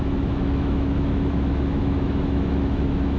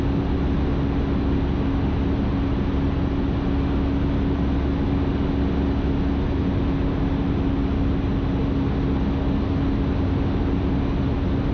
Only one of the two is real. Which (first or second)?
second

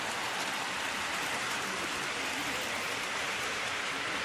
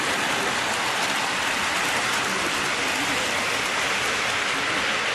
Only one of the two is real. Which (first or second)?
second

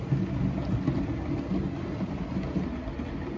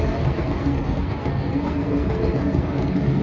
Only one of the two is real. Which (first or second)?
first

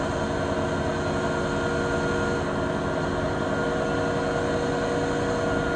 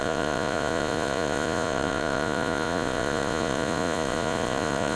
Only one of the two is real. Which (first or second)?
first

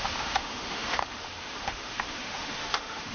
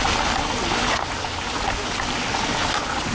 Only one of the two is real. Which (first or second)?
second